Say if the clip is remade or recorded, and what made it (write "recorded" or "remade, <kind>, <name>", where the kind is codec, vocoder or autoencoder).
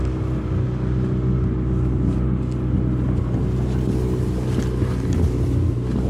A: recorded